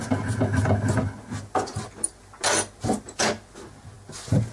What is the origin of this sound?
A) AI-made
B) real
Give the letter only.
B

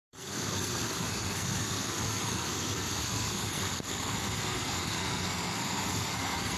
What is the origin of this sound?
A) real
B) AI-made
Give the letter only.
B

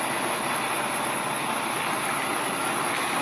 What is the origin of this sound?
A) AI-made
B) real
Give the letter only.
B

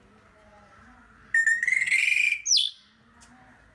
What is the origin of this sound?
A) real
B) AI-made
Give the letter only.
A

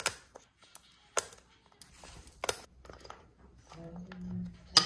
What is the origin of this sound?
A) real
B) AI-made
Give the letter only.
A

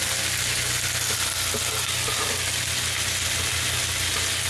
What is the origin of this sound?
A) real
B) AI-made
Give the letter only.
A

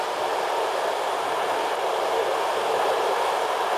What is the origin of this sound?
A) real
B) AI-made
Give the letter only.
A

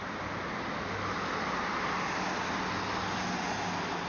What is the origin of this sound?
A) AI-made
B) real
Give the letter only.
B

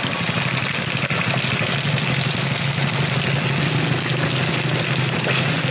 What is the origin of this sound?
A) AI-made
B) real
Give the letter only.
B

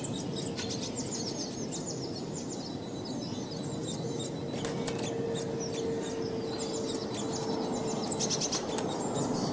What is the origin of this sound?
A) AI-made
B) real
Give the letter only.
B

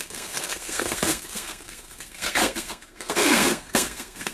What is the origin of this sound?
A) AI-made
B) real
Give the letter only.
A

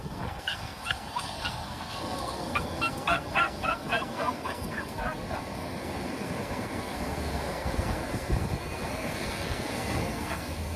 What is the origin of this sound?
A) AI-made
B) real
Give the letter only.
A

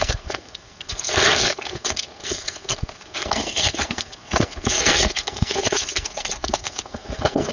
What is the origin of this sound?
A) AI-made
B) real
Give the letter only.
A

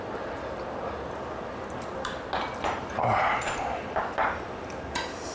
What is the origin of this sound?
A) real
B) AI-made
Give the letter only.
A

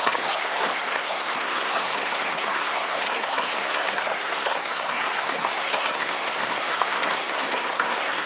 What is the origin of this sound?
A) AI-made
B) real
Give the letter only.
A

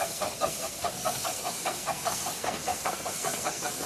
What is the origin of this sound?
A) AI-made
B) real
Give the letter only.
A